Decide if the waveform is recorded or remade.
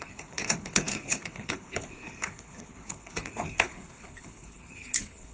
remade